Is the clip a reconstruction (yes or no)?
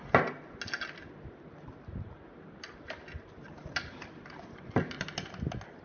no